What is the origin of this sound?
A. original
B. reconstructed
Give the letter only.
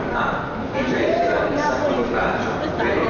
A